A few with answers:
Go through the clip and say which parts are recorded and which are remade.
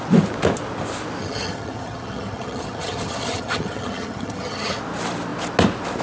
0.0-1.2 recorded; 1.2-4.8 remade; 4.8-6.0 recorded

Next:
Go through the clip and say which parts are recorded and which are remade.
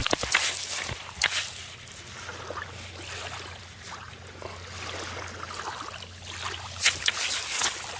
0.0-8.0 recorded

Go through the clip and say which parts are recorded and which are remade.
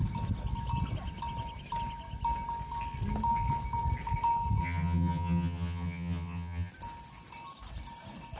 0.0-4.6 recorded; 4.6-6.7 remade; 6.7-8.4 recorded